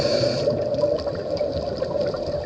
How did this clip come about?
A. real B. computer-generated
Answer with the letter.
A